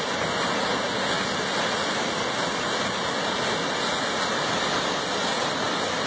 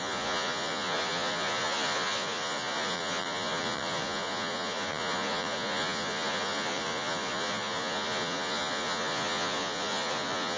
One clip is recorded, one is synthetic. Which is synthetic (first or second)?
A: second